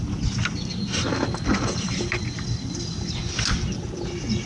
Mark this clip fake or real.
real